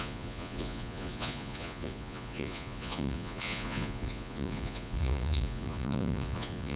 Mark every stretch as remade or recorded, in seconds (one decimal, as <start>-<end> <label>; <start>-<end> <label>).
0.0-6.8 remade